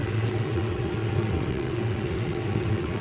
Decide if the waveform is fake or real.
fake